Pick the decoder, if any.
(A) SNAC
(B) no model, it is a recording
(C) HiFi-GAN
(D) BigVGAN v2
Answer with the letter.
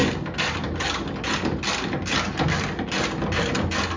B